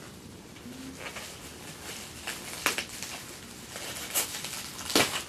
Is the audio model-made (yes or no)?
no